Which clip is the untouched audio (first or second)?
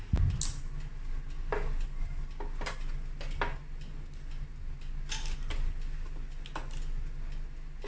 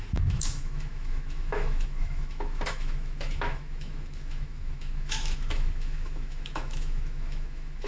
first